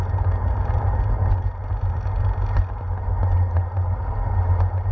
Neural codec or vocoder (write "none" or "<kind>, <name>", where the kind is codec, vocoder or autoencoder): none